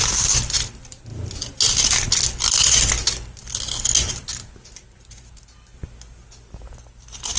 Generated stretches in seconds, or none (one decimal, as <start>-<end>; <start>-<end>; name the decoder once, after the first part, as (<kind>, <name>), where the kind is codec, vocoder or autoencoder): none